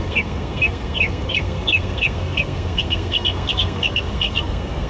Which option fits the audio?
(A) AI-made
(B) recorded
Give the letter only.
A